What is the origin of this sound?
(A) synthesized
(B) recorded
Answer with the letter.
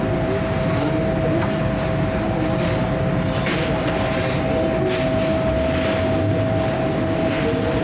B